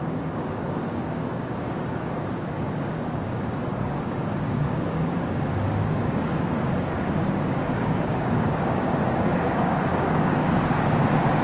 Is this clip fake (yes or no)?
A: yes